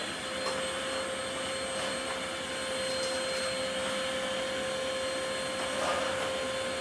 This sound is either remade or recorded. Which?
recorded